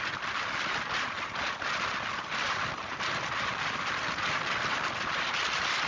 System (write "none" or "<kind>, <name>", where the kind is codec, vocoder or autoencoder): none